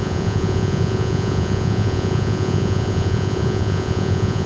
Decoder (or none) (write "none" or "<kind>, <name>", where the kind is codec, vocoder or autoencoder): vocoder, Vocos